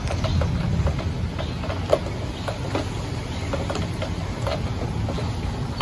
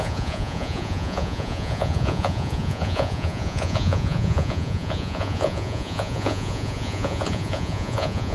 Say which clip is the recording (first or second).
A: first